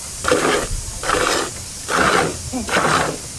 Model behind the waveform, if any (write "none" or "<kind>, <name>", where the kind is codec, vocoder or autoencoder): none